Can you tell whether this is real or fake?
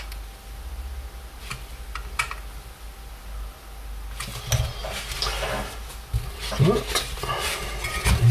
real